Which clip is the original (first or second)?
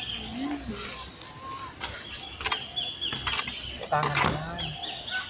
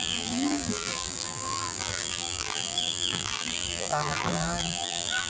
first